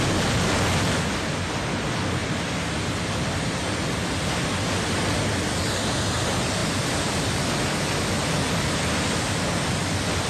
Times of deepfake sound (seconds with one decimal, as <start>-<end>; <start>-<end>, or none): 6.6-7.4